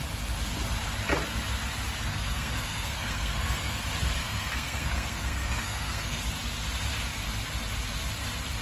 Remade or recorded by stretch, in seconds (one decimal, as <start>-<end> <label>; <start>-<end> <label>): 0.0-2.1 recorded; 2.1-3.8 remade; 3.8-4.2 recorded; 4.2-6.2 remade; 6.2-8.6 recorded

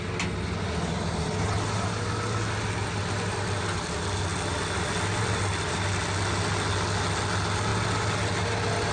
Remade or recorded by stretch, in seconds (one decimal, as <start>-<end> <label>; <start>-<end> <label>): 0.0-8.9 recorded

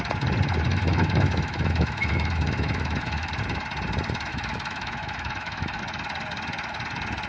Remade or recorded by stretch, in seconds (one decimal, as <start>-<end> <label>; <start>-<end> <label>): 0.0-0.7 recorded; 0.7-3.3 remade; 3.3-4.3 recorded; 4.3-5.8 remade; 5.8-7.3 recorded

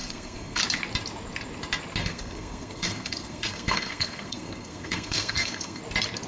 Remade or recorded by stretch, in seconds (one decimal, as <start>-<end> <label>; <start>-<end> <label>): 0.0-0.6 remade; 0.6-2.0 recorded; 2.0-5.8 remade; 5.8-6.3 recorded

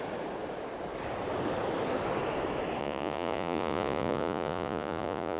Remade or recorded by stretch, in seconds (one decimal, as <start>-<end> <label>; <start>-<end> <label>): 0.0-2.8 recorded; 2.8-5.4 remade

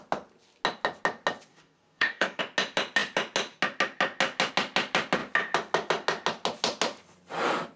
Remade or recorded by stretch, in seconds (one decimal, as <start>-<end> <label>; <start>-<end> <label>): 0.0-1.5 recorded; 1.5-2.4 remade; 2.4-7.8 recorded